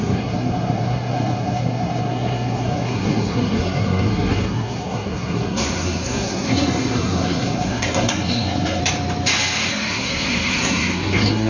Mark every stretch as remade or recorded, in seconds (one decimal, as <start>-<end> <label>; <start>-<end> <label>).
0.0-8.8 remade; 8.8-9.7 recorded; 9.7-11.5 remade